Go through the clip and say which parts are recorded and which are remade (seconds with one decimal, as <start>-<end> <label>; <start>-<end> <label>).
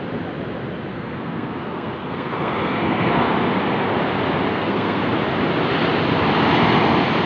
0.0-0.9 recorded; 0.9-3.3 remade; 3.3-4.5 recorded; 4.5-5.1 remade; 5.1-7.3 recorded